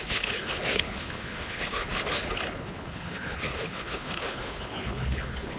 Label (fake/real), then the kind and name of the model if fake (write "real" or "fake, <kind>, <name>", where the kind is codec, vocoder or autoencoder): fake, codec, HILCodec